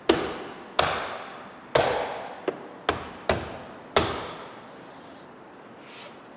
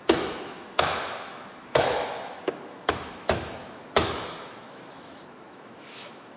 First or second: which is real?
first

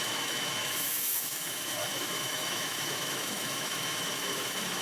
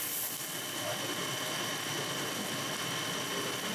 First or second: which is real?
second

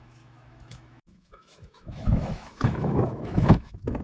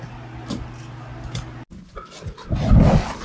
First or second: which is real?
second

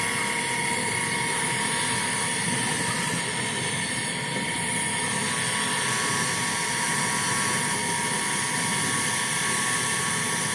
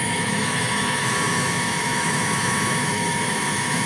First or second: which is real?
first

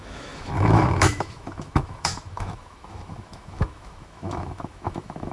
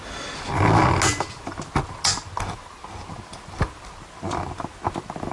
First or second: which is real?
second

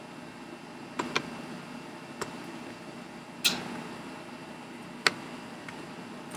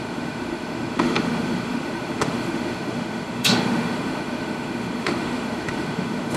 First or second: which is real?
first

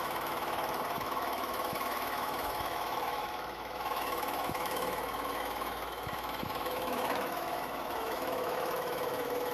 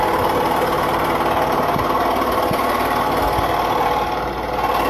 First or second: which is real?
second